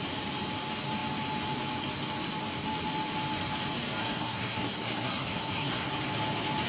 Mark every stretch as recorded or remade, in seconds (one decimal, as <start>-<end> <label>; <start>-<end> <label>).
0.0-4.0 recorded; 4.0-5.9 remade; 5.9-6.7 recorded